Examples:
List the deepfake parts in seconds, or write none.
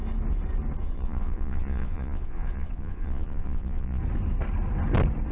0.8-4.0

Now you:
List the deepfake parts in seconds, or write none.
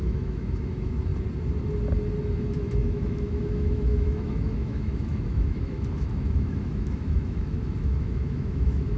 0.0-1.1; 2.3-9.0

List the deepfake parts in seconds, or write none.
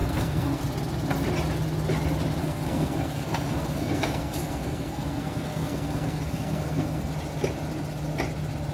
0.0-0.6; 2.4-7.1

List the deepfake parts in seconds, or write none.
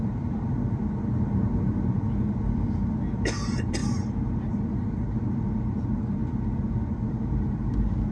none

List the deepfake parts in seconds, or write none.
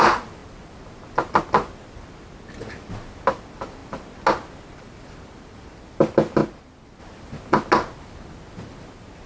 none